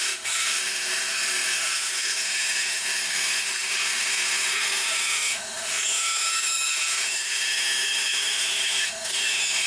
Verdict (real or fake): fake